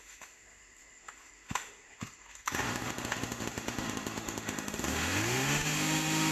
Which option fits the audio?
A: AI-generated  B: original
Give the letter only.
A